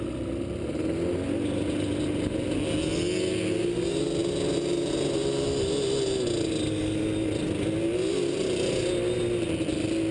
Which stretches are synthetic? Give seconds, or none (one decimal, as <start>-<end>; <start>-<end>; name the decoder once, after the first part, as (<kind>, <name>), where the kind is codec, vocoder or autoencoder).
none